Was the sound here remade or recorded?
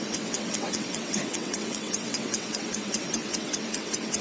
remade